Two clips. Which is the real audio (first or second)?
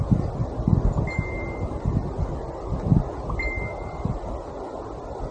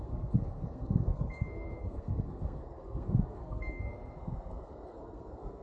first